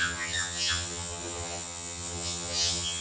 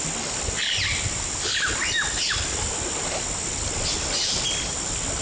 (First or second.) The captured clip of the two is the second